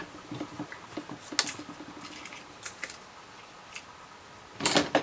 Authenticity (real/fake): real